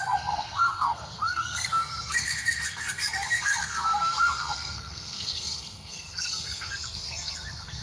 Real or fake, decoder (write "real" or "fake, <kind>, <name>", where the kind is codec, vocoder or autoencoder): fake, codec, SNAC